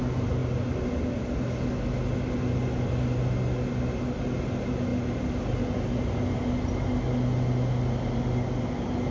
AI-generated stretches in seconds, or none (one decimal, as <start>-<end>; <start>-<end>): none